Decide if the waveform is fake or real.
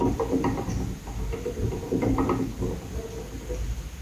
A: real